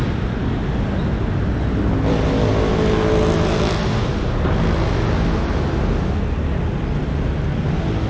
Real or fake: real